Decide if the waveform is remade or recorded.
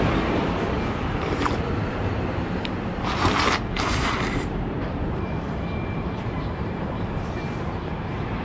remade